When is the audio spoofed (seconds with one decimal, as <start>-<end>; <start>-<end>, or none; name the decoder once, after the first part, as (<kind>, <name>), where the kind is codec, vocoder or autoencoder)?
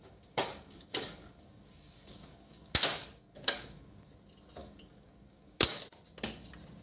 0.0-4.1 (codec, DAC); 4.6-5.8